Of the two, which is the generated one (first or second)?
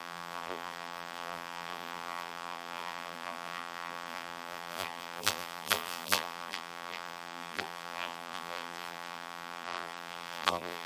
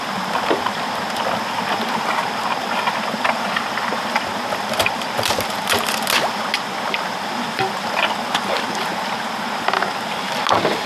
first